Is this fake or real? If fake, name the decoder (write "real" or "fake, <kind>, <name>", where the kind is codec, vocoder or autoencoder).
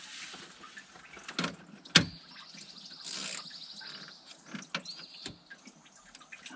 real